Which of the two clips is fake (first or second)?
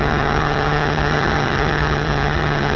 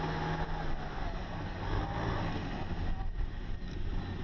first